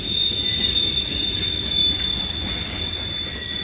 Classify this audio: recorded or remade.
recorded